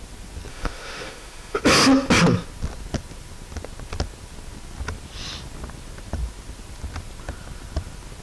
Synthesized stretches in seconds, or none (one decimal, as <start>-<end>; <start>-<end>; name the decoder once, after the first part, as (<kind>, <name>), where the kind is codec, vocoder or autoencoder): 0.5-1.6 (autoencoder, DAC-VAE)